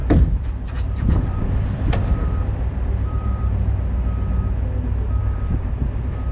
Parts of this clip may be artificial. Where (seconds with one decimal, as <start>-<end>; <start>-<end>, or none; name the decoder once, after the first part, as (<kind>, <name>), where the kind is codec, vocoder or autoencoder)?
0.0-3.8 (vocoder, BigVGAN v2)